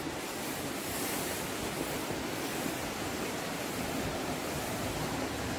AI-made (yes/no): no